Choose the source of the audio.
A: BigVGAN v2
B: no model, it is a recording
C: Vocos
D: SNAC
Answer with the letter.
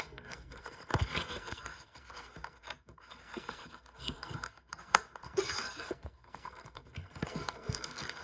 D